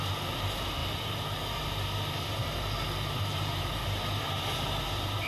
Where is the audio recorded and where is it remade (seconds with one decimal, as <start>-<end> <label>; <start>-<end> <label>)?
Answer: 0.0-5.3 recorded